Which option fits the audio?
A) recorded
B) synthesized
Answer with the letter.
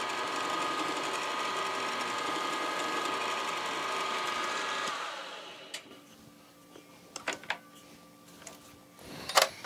A